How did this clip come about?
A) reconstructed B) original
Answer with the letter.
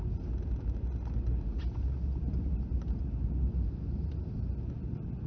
B